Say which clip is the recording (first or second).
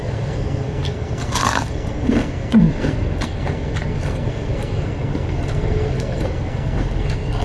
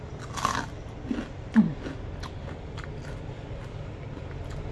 second